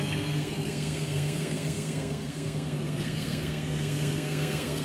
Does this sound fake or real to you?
fake